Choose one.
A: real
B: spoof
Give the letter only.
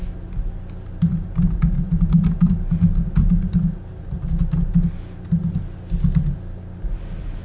A